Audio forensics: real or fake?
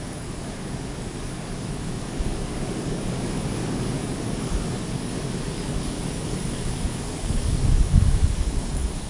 fake